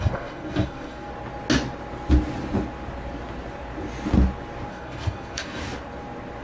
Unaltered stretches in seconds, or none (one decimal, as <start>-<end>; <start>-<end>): 1.1-4.7; 5.6-6.4